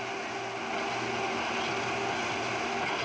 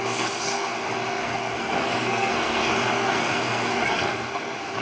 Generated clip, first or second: second